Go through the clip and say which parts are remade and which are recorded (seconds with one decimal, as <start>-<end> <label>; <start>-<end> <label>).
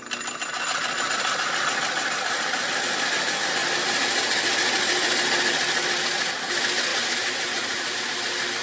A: 0.0-3.6 recorded; 3.6-4.3 remade; 4.3-6.9 recorded; 6.9-8.0 remade; 8.0-8.6 recorded